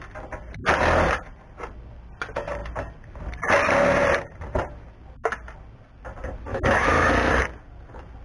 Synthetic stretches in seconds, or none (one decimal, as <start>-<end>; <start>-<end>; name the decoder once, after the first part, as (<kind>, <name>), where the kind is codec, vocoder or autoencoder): 6.5-7.1 (autoencoder, DAC-VAE)